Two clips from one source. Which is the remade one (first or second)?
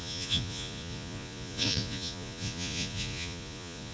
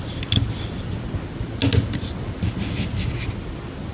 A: first